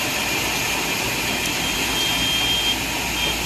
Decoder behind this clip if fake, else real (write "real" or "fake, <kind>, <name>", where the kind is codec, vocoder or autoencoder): real